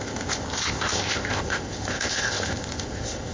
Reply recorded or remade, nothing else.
remade